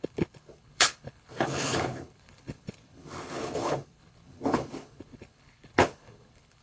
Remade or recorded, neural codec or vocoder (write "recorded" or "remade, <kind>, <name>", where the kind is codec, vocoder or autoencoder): remade, codec, HILCodec